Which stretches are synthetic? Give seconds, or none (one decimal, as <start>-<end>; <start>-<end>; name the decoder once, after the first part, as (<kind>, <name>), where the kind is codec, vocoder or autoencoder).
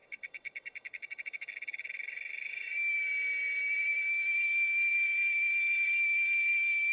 0.0-6.9 (codec, DAC)